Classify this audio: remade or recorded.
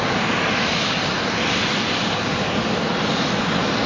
recorded